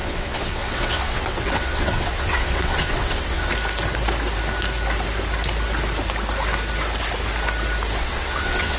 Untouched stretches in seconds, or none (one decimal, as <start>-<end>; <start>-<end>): 3.5-8.0